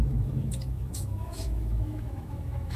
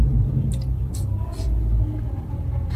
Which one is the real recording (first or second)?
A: second